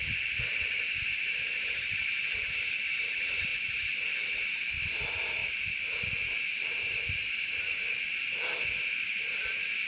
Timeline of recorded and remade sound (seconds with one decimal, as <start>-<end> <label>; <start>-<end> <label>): 0.0-9.9 remade